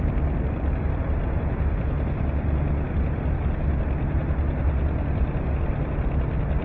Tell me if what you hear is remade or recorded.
recorded